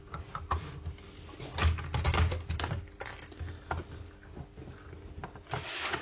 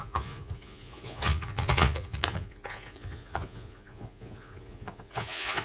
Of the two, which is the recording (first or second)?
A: first